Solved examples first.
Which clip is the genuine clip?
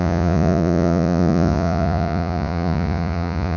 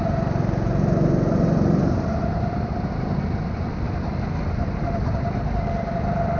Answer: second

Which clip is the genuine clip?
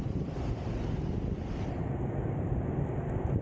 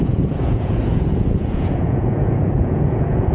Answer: first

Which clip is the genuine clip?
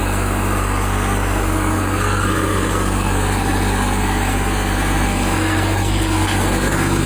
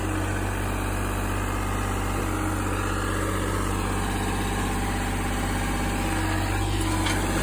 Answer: second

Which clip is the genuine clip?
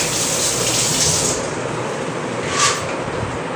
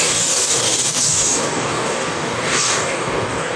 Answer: first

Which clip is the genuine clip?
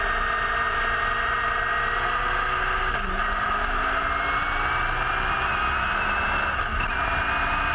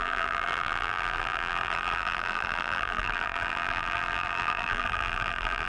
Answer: first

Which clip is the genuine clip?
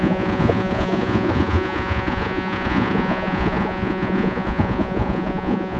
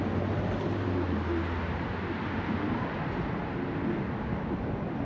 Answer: second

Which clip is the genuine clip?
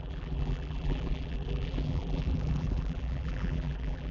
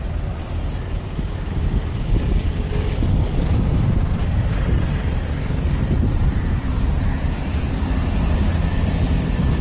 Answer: second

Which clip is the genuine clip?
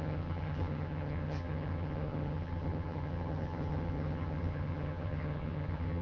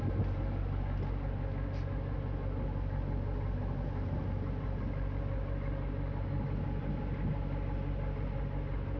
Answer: second